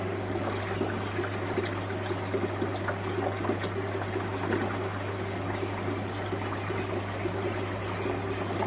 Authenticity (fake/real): real